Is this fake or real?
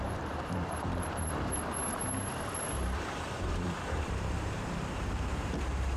fake